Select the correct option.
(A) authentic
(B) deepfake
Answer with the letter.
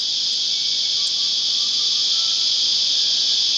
B